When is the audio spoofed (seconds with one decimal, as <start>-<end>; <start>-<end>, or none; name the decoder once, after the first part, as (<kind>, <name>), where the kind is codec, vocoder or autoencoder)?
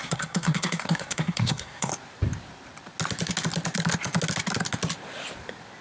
0.0-1.9 (codec, SNAC)